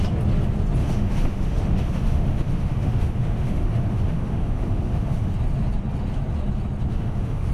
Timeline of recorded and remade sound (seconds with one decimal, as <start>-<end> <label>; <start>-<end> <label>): 0.0-0.8 recorded; 0.8-5.3 remade; 5.3-6.9 recorded; 6.9-7.5 remade